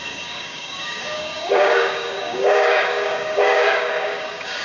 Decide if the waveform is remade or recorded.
remade